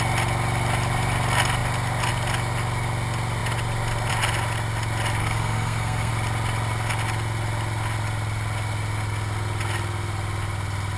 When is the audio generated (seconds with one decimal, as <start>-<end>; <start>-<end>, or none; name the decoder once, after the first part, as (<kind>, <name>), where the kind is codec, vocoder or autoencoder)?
5.2-6.1 (codec, SNAC)

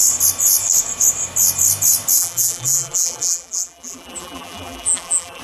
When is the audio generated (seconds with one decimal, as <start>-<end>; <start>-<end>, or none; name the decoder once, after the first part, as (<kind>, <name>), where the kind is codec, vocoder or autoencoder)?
2.2-5.4 (vocoder, BigVGAN v2)